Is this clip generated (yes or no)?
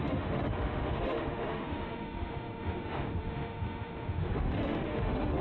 yes